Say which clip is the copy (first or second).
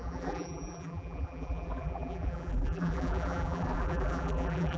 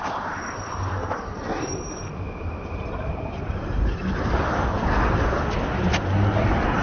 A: first